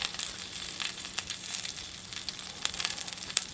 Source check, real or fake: real